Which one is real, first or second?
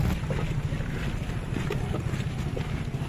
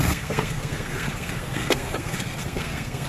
first